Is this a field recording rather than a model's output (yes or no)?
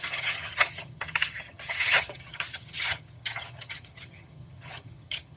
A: no